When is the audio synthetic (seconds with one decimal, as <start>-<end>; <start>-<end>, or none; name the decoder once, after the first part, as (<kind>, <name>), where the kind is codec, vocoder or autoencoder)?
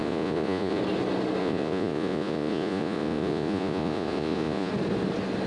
0.0-0.8 (vocoder, Vocos); 1.4-4.7